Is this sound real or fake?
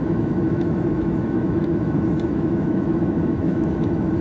fake